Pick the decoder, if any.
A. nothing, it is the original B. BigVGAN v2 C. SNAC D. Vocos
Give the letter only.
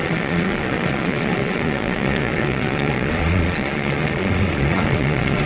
D